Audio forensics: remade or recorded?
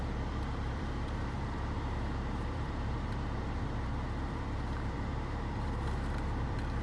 remade